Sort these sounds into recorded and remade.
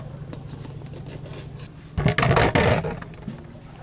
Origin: recorded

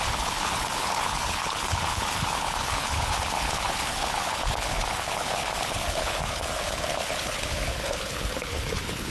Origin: remade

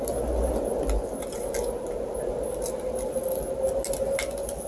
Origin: recorded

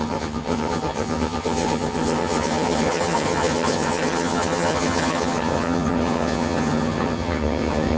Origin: remade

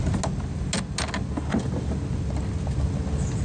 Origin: recorded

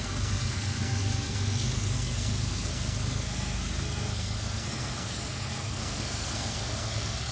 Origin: remade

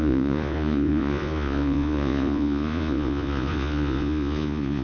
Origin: remade